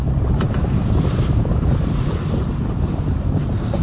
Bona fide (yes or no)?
yes